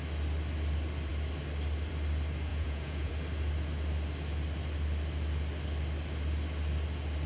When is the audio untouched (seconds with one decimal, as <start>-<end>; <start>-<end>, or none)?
0.0-2.5; 3.1-7.3